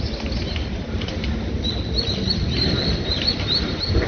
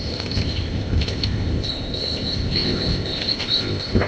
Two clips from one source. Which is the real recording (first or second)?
first